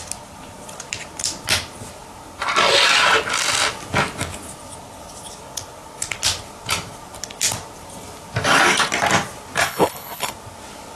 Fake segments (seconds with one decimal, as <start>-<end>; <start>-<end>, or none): 9.6-10.3